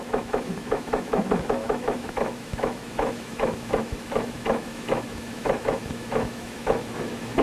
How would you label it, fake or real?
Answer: fake